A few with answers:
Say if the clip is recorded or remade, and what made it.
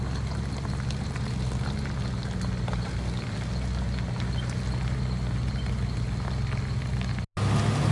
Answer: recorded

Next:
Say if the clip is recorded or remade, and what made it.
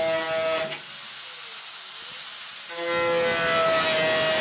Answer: recorded